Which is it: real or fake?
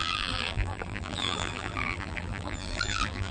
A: fake